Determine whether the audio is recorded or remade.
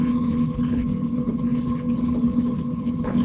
remade